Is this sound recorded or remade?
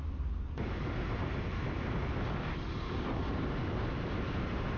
recorded